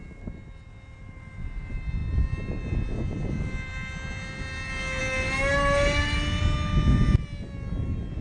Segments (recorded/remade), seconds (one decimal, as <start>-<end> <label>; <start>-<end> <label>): 0.0-8.2 recorded